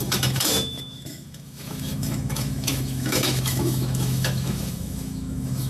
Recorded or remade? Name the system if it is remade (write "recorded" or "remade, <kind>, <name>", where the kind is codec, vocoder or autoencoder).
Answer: remade, autoencoder, DAC-VAE